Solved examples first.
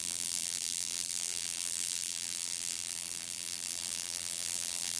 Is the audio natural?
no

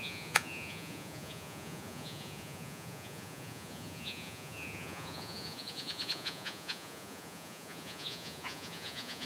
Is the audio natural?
no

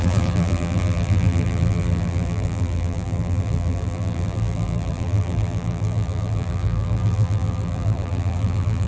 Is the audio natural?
no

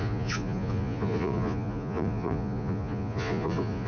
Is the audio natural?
no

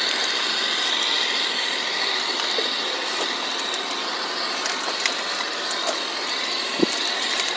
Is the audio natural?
yes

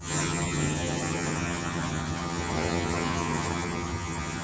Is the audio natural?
no